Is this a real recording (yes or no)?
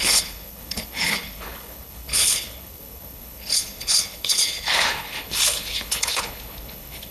no